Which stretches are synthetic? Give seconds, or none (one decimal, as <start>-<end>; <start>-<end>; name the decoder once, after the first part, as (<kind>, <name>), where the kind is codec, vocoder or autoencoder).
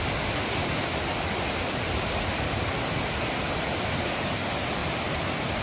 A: none